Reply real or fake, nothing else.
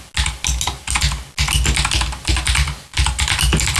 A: real